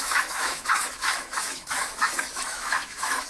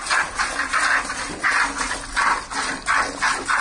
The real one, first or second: second